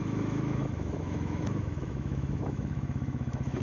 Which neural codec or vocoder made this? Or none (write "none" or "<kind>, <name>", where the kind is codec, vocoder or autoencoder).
autoencoder, DAC-VAE